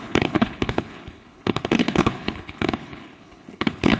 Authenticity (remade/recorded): remade